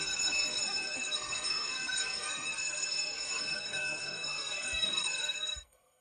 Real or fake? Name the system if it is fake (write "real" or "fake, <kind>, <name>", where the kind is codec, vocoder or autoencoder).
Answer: fake, codec, SNAC